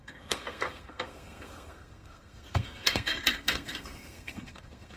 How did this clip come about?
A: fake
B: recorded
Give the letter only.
A